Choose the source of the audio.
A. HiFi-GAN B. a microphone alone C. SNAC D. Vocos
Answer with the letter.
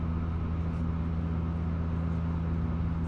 B